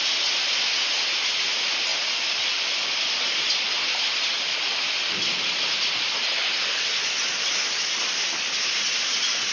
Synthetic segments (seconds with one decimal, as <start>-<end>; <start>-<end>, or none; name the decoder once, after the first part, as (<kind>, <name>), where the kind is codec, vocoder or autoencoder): none